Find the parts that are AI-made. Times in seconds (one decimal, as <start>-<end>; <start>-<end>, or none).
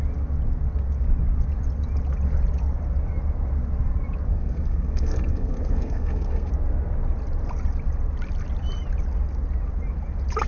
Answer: 4.3-6.5